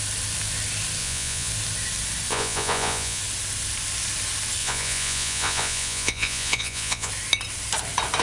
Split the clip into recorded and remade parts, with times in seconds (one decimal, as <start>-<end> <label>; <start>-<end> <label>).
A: 0.0-1.0 recorded; 1.0-1.5 remade; 1.5-2.3 recorded; 2.3-3.2 remade; 3.2-4.6 recorded; 4.6-7.1 remade; 7.1-8.2 recorded